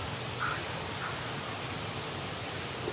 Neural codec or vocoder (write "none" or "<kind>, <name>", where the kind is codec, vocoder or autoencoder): none